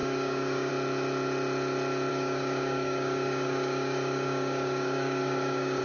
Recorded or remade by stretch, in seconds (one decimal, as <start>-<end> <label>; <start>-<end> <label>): 0.0-0.7 remade; 0.7-2.1 recorded; 2.1-5.8 remade